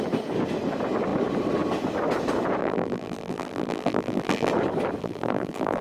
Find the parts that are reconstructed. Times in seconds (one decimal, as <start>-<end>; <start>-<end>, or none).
2.6-4.5; 5.0-5.8